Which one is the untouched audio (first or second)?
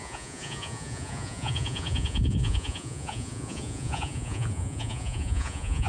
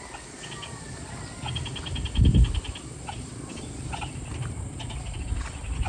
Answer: second